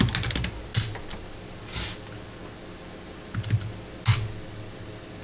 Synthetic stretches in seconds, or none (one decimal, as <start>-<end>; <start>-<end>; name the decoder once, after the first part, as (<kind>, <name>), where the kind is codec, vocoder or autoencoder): none